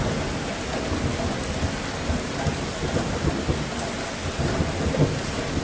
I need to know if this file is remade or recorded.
recorded